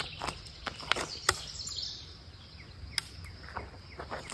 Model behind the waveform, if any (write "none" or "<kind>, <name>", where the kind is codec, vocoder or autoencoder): none